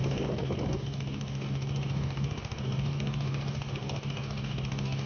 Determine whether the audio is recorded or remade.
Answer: remade